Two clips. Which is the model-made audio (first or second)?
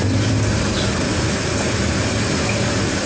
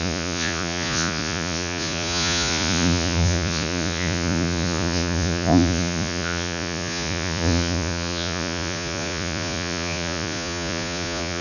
second